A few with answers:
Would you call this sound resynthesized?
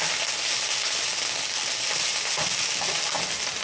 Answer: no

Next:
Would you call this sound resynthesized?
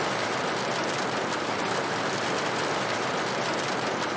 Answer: no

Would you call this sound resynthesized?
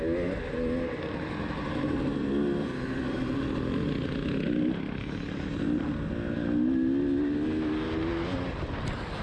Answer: no